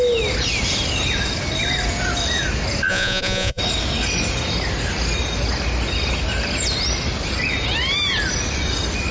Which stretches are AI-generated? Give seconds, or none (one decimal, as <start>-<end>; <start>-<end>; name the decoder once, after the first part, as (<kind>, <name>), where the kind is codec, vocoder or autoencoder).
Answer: 2.9-3.6 (vocoder, Vocos)